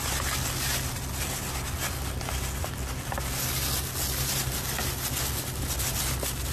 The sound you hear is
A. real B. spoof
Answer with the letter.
A